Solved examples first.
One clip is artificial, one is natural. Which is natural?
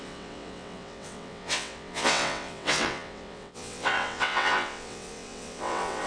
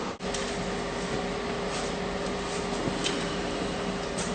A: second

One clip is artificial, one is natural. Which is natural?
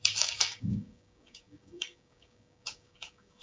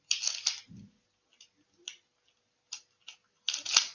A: second